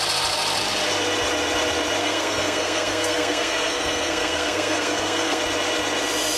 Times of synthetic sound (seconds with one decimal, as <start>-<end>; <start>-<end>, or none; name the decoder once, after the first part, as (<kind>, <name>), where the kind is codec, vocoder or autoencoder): 2.0-5.4 (codec, SNAC)